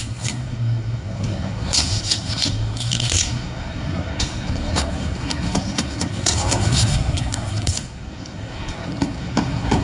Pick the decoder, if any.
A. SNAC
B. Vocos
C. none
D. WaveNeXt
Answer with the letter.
A